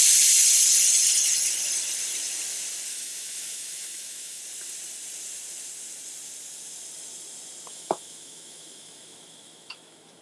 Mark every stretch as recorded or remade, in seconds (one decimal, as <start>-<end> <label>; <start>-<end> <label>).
0.0-2.9 recorded; 2.9-4.4 remade; 4.4-7.7 recorded; 7.7-10.2 remade